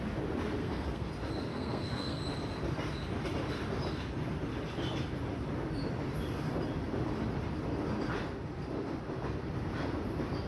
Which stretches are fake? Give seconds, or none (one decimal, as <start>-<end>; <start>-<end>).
0.6-1.1; 1.5-2.2